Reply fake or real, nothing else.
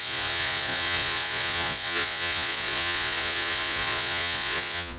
fake